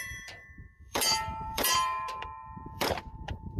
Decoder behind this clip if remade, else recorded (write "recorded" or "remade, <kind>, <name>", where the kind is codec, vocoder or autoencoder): remade, vocoder, BigVGAN v2